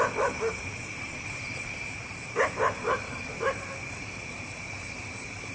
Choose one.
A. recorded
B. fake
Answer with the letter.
B